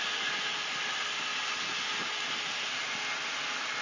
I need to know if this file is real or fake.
real